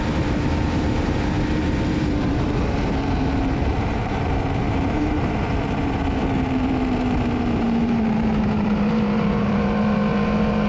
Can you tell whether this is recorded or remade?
remade